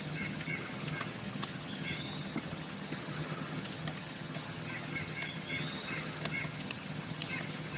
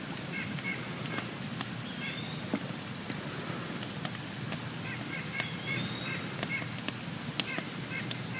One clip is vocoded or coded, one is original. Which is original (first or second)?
second